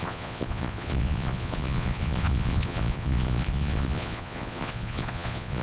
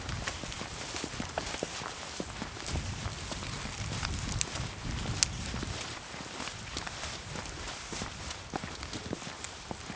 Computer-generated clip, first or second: first